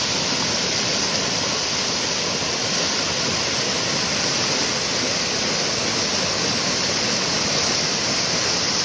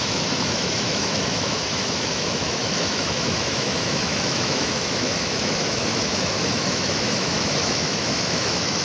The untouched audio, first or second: first